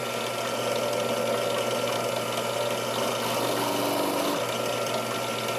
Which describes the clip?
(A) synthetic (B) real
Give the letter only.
B